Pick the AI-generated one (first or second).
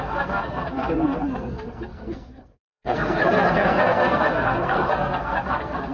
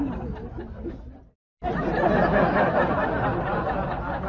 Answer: first